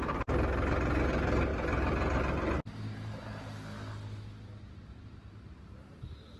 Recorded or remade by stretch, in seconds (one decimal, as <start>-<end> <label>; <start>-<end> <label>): 0.0-6.4 recorded